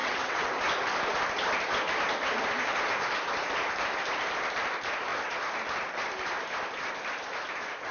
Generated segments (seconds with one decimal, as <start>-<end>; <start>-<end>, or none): 0.0-0.5